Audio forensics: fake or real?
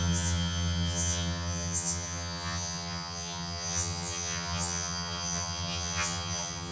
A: fake